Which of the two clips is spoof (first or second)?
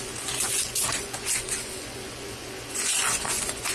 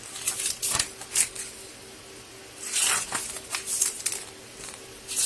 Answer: first